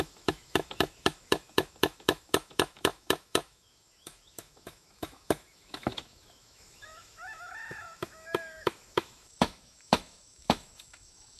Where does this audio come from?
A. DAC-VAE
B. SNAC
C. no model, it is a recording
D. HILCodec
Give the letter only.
A